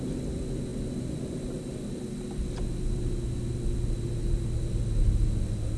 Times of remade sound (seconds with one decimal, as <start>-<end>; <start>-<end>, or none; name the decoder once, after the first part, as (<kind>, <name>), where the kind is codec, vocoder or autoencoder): none